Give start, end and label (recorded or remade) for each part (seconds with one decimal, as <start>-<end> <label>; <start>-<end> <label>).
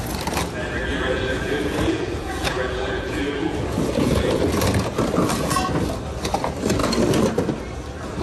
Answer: 0.0-0.9 recorded; 0.9-4.6 remade; 4.6-8.2 recorded